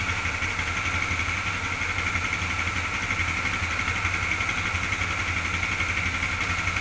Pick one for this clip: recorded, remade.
recorded